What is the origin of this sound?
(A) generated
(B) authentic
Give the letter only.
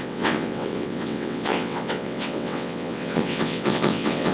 A